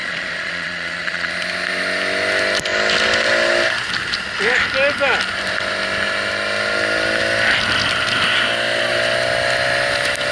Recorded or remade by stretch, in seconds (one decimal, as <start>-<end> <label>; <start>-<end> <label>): 0.0-1.3 remade; 1.3-10.3 recorded